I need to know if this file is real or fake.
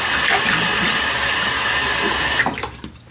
real